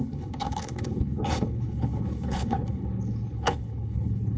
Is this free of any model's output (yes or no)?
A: no